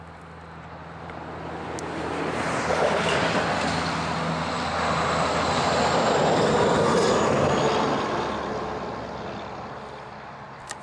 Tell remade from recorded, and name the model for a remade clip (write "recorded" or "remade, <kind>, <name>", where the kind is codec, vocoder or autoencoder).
recorded